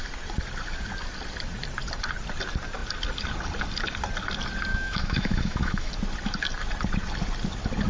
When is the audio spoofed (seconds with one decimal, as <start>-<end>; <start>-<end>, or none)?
4.7-5.9